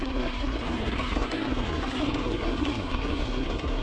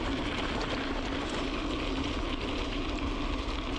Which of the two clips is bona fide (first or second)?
second